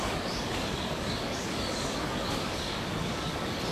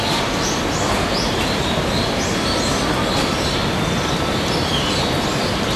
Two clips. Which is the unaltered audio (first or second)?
second